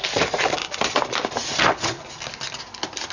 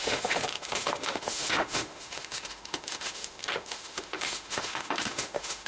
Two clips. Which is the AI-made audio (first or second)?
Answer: second